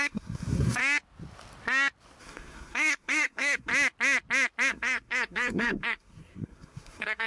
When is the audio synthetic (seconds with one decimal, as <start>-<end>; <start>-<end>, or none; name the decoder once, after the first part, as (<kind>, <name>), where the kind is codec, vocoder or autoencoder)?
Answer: 0.0-0.8 (codec, SNAC); 2.2-3.7; 4.7-7.3